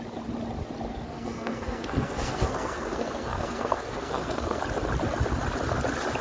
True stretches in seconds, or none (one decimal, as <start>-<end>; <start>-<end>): 0.0-0.9; 4.6-6.2